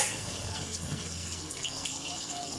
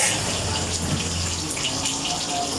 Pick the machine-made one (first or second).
first